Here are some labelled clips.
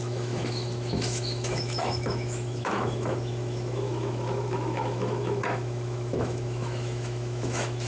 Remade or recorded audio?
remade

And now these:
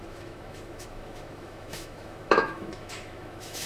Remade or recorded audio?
remade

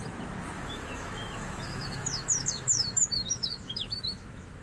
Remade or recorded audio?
remade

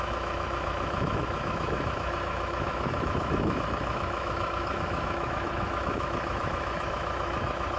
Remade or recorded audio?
remade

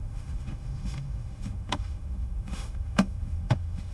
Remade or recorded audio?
remade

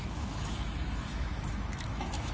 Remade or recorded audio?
remade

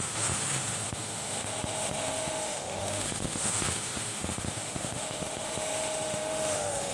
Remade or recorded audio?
remade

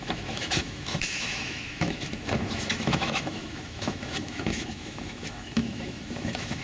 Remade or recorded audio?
remade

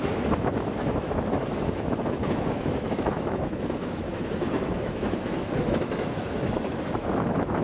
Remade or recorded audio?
remade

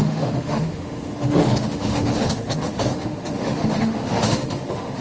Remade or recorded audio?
remade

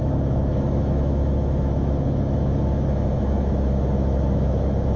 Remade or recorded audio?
remade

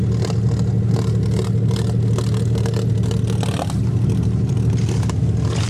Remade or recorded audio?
recorded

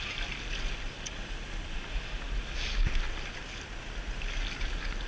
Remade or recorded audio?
recorded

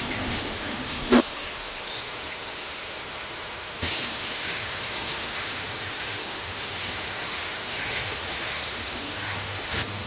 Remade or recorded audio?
remade